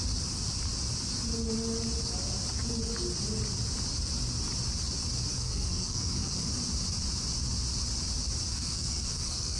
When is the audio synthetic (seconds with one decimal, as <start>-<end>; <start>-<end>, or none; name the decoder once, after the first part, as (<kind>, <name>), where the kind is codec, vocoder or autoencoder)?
5.3-6.5 (codec, SNAC); 8.5-9.6